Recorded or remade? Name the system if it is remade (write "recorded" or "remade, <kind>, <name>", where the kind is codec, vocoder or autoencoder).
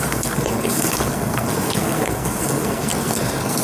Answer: remade, codec, SNAC